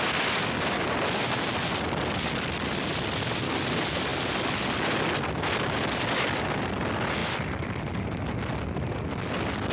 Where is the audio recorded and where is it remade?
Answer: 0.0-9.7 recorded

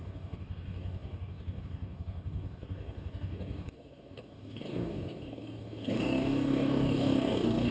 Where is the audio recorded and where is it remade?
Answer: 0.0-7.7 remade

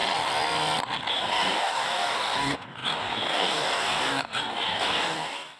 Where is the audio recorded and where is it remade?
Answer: 0.0-1.1 recorded; 1.1-5.6 remade

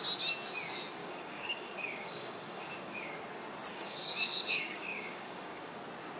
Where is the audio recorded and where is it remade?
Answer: 0.0-1.0 recorded; 1.0-3.1 remade; 3.1-3.7 recorded; 3.7-5.8 remade; 5.8-6.2 recorded

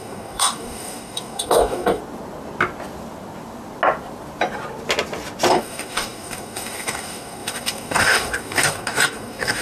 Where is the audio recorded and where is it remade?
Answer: 0.0-2.0 remade; 2.0-5.5 recorded; 5.5-9.6 remade